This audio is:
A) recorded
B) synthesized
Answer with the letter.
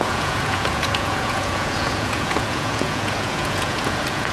B